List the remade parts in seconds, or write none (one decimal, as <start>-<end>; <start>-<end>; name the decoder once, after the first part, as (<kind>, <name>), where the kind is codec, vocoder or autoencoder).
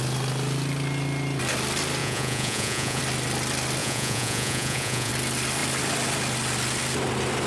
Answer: 2.0-3.0 (vocoder, Vocos); 3.8-5.1